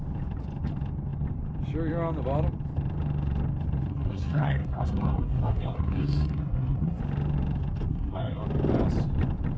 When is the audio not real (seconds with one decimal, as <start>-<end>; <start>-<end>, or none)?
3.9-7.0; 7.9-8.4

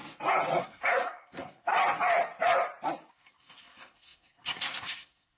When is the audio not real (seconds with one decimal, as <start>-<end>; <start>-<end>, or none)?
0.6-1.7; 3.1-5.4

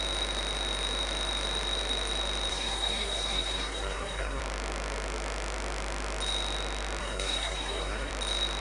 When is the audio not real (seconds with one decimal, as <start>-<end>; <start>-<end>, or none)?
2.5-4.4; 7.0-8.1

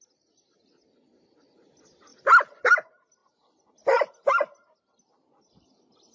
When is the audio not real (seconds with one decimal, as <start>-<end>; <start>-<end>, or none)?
none

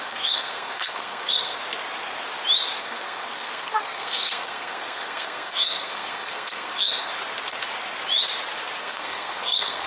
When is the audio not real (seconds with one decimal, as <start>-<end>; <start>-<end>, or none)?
0.0-1.6; 2.8-7.1; 8.8-9.9

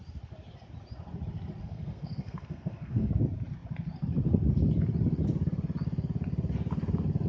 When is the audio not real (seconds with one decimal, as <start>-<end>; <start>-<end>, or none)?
1.6-3.1

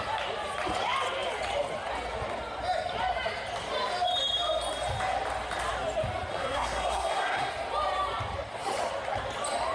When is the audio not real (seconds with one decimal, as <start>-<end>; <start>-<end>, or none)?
6.3-7.5

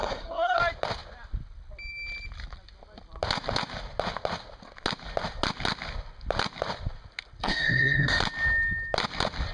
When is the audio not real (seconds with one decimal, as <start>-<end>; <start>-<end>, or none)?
0.0-0.6; 7.4-8.2